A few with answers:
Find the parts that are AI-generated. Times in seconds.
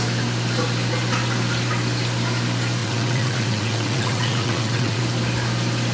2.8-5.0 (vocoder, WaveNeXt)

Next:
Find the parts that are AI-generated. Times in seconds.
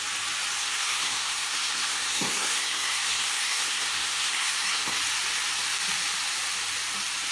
0.6-5.0 (codec, SNAC)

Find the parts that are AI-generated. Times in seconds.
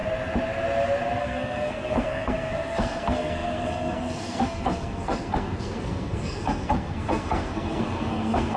1.2-8.6 (codec, SNAC)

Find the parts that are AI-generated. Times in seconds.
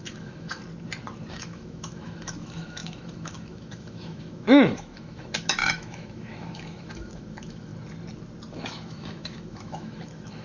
0.0-0.6 (autoencoder, DAC-VAE); 1.3-7.7; 8.5-10.4